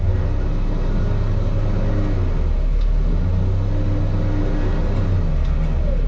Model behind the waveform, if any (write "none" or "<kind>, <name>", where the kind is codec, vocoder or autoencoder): none